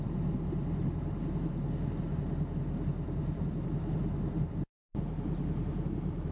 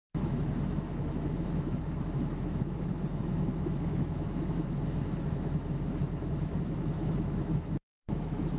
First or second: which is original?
first